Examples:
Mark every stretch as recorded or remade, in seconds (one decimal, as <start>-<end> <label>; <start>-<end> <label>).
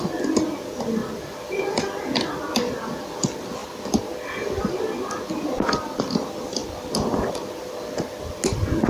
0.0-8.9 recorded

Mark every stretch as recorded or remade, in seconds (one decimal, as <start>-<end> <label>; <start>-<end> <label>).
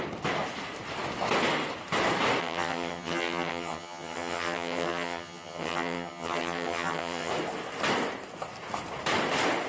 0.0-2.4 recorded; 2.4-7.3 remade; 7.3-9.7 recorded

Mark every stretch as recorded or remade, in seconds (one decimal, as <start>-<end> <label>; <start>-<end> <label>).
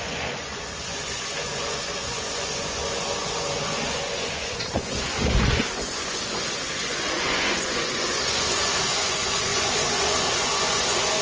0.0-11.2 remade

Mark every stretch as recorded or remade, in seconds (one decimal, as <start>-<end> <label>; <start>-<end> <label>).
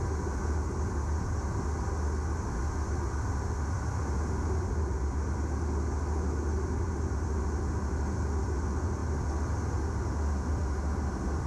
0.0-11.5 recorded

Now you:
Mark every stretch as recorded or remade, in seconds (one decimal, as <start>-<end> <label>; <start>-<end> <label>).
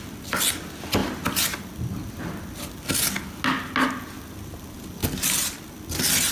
0.0-6.3 recorded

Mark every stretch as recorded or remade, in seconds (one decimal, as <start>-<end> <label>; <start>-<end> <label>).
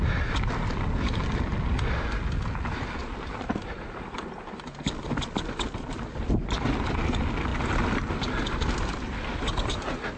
0.0-3.0 recorded; 3.0-4.1 remade; 4.1-10.2 recorded